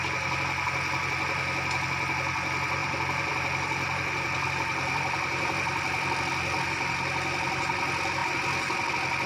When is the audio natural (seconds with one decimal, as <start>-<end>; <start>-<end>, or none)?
0.0-2.8; 6.2-9.3